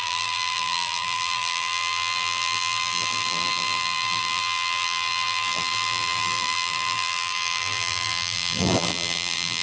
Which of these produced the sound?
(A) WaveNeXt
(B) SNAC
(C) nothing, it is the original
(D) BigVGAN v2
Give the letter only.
D